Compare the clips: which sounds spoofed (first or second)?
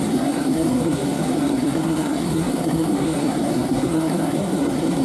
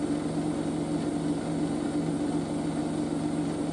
first